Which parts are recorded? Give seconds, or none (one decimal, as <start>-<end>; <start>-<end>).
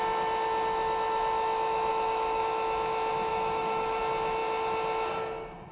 0.0-1.9; 2.4-3.3; 4.0-5.7